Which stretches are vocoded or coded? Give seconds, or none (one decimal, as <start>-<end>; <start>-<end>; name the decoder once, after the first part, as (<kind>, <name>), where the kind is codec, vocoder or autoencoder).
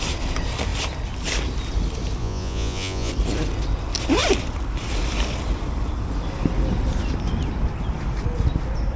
2.2-3.1 (vocoder, Vocos)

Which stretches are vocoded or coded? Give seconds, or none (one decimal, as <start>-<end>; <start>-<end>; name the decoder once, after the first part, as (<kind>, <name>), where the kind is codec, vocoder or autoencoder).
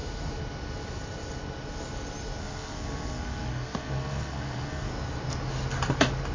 2.4-4.9 (codec, SNAC)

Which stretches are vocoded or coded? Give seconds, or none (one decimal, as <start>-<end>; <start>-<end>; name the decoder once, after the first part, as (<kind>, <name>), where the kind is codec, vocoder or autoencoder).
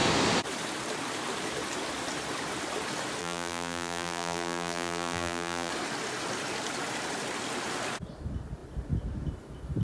3.2-5.7 (vocoder, BigVGAN v2)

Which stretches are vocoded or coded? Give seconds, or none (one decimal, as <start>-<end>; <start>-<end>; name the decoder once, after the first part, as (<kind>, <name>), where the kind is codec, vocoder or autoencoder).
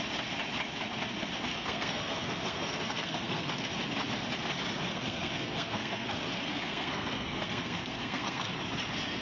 1.5-3.7 (codec, SNAC); 4.9-8.5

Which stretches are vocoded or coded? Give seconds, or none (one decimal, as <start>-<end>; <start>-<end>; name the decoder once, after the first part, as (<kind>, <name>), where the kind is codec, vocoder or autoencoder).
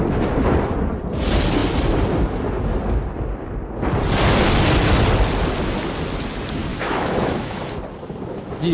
6.7-7.6 (autoencoder, DAC-VAE)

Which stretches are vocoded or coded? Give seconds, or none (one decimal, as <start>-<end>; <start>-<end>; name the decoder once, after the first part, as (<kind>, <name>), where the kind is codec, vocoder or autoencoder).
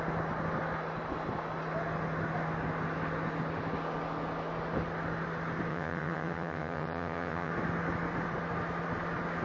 5.7-7.5 (vocoder, HiFi-GAN)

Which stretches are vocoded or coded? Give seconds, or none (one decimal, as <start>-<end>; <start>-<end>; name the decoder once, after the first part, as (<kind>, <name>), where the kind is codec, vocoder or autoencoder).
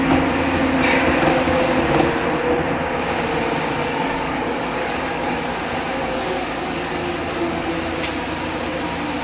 3.8-5.5 (codec, DAC); 6.0-7.7